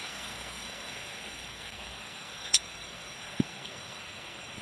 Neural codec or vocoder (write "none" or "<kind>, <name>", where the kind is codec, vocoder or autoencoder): codec, SNAC